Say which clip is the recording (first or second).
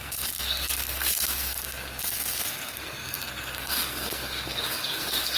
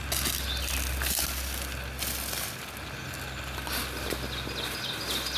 second